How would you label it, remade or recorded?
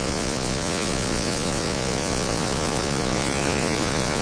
remade